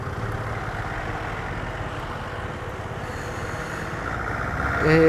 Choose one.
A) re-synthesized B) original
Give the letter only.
B